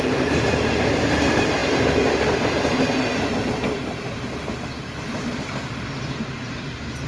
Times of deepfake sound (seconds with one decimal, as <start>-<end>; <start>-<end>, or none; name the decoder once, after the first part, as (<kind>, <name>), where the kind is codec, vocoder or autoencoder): none